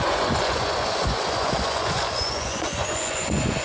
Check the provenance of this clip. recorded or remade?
remade